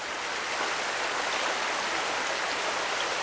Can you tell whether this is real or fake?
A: real